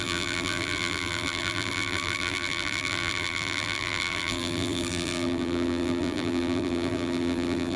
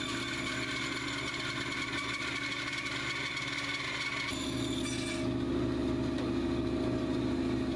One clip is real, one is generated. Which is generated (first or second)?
first